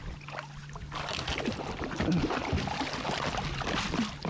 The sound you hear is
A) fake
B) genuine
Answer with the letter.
B